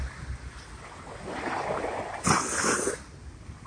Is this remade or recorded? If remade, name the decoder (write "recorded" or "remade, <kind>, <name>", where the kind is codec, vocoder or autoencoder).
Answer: recorded